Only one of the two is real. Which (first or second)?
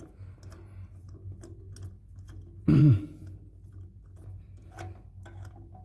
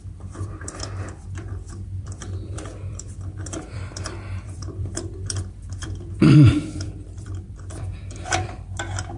first